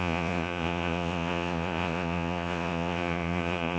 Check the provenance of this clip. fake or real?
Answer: fake